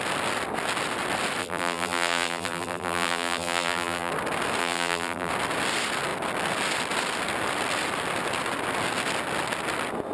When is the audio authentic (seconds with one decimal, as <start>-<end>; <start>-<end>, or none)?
0.0-1.4; 4.1-4.6; 5.3-10.1